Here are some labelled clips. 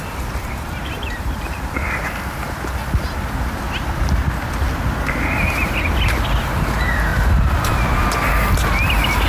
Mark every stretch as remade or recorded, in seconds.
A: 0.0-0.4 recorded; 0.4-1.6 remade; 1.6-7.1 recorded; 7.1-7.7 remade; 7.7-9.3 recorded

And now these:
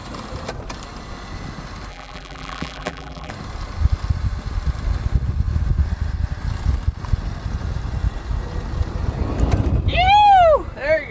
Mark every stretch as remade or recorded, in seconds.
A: 0.0-1.9 recorded; 1.9-3.3 remade; 3.3-11.1 recorded